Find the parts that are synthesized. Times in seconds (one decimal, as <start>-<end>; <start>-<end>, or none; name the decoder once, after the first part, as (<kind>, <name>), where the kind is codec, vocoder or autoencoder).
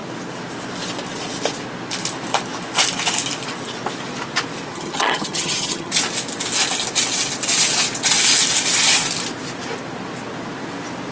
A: 4.7-5.9 (vocoder, HiFi-GAN)